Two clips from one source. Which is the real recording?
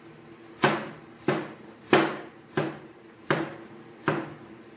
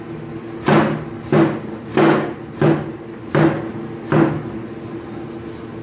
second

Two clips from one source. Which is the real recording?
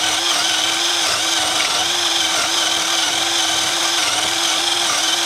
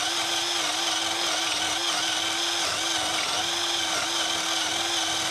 second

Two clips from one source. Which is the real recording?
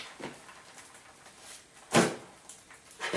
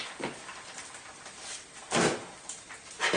first